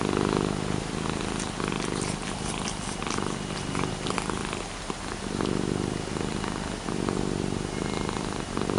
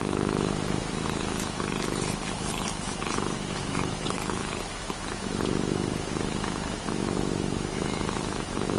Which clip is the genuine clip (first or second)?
first